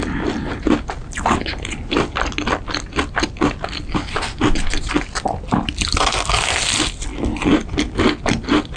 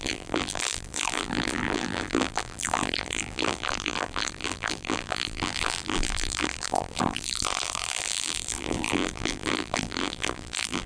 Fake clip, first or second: second